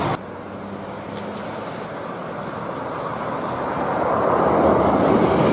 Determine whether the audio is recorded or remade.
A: recorded